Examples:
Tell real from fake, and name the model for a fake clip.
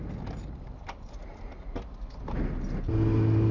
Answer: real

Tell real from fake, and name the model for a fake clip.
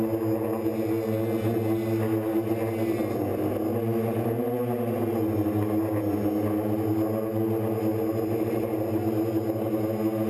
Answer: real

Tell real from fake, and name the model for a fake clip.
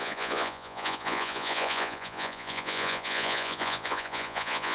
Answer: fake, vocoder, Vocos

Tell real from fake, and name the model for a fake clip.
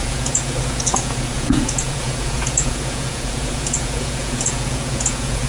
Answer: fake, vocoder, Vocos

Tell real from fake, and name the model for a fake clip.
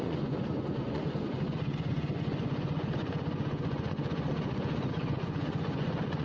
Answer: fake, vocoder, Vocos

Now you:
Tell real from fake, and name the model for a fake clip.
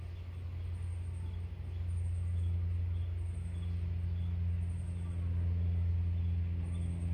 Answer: real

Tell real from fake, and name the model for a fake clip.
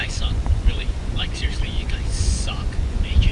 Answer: fake, vocoder, Vocos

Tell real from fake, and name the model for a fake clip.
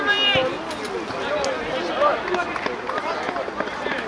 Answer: real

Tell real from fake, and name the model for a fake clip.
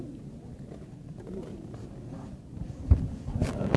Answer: real